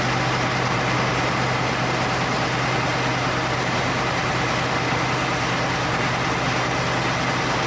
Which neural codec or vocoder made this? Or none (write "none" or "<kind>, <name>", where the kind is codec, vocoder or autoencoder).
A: none